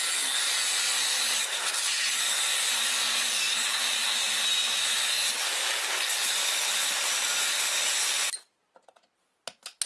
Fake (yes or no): no